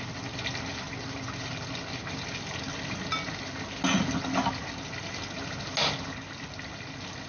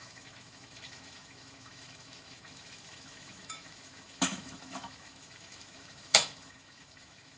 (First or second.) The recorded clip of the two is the first